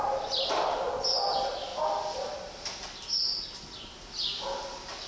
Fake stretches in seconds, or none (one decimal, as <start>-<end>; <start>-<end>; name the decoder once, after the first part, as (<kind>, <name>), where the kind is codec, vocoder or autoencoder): none